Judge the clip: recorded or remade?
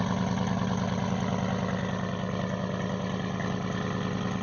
recorded